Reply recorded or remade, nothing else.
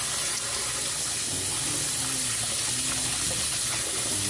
recorded